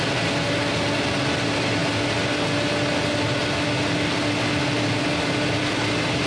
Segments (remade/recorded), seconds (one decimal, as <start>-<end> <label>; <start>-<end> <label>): 0.0-6.3 recorded